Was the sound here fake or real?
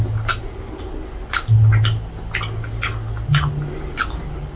real